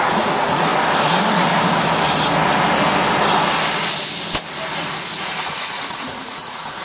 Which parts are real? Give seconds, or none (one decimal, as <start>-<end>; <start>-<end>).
0.7-4.8

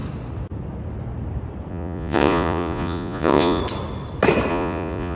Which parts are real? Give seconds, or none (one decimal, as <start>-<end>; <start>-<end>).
0.0-1.7; 3.6-4.5

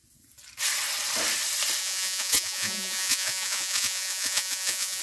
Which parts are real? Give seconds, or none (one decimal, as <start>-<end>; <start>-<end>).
0.0-1.8

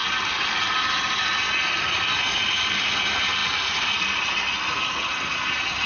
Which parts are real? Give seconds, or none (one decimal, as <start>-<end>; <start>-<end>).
0.0-5.9